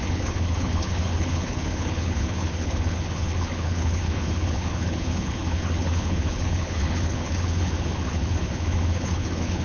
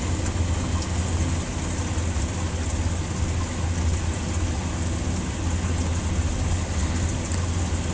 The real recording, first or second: second